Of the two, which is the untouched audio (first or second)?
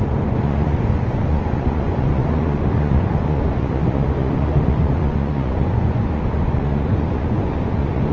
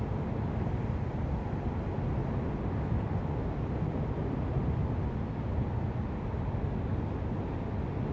second